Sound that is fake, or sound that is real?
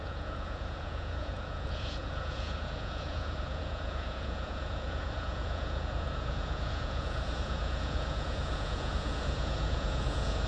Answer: fake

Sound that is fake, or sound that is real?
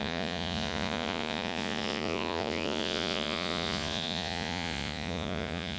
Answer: fake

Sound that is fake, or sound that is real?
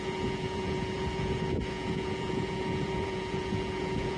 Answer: fake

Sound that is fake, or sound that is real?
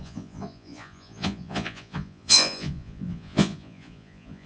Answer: fake